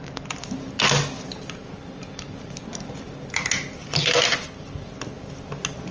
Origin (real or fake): real